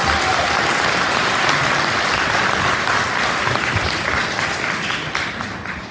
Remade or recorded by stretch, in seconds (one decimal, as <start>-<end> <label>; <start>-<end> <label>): 0.0-5.9 remade